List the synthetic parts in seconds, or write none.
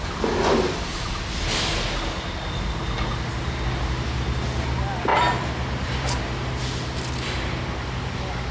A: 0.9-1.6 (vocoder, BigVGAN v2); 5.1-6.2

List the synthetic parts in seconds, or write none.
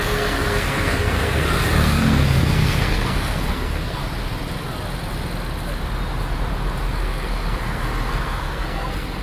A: 0.0-4.0 (codec, SNAC); 6.9-9.2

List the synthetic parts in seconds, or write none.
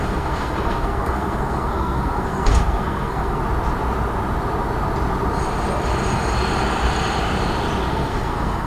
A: 0.0-3.4 (codec, SNAC); 7.9-8.7